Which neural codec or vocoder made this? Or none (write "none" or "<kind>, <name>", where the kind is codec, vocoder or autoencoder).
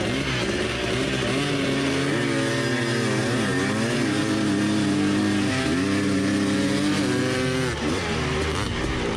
none